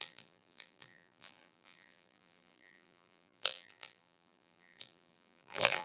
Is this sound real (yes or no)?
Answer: no